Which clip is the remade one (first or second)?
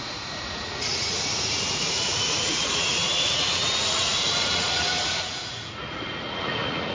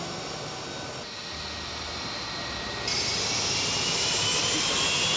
first